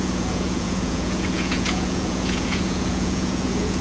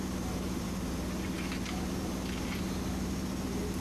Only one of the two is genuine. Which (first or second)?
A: second